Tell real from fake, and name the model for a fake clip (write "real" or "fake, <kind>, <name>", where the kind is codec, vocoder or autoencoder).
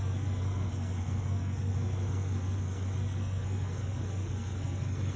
fake, codec, SNAC